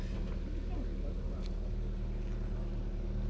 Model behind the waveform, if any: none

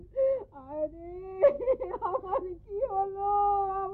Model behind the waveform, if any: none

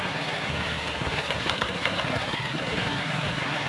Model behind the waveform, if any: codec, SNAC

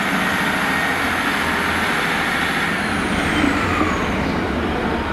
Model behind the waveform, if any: none